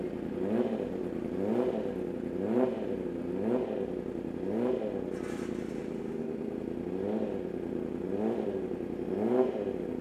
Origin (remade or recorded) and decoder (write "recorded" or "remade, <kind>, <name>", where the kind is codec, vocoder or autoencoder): recorded